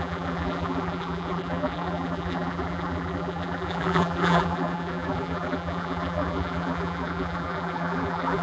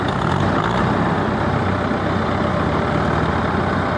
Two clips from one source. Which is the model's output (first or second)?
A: first